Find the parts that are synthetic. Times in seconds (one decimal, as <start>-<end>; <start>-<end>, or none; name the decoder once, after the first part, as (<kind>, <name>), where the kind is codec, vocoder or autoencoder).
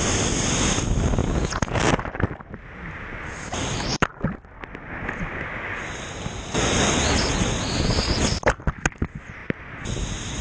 1.2-1.8 (vocoder, Vocos)